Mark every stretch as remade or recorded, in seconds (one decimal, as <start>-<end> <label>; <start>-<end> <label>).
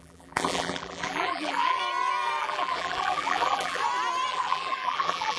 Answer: 0.0-1.8 remade; 1.8-2.4 recorded; 2.4-3.8 remade; 3.8-4.3 recorded; 4.3-5.4 remade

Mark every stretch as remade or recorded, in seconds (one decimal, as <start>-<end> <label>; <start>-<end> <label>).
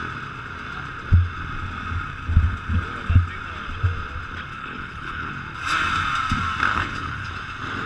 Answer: 0.0-4.5 recorded; 4.5-5.3 remade; 5.3-6.7 recorded; 6.7-7.3 remade; 7.3-7.9 recorded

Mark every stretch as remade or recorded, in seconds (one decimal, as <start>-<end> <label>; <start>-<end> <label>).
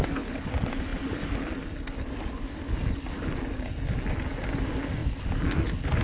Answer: 0.0-6.0 recorded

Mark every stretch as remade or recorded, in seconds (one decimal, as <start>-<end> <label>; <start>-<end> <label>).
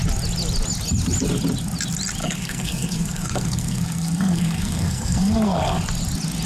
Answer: 0.0-2.2 recorded; 2.2-5.8 remade; 5.8-6.5 recorded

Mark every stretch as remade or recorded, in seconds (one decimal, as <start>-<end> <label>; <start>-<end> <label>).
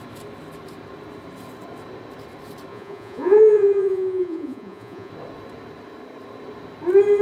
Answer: 0.0-2.7 recorded; 2.7-5.1 remade; 5.1-7.2 recorded